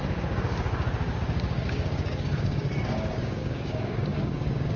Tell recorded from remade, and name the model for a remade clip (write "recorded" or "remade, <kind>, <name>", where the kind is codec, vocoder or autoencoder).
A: remade, codec, DAC